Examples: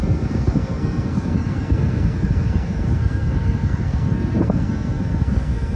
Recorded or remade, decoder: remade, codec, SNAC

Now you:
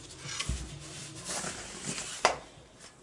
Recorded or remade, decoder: recorded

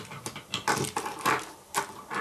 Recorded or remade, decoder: recorded